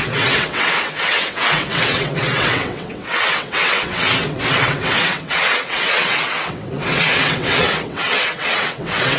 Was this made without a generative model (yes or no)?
no